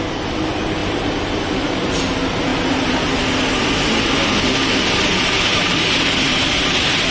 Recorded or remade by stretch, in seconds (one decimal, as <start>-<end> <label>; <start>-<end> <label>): 0.0-0.8 recorded; 0.8-1.9 remade; 1.9-5.5 recorded; 5.5-7.1 remade